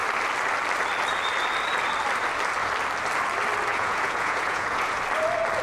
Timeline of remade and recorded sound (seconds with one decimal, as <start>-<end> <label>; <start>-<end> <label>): 0.0-3.7 recorded; 3.7-5.0 remade; 5.0-5.6 recorded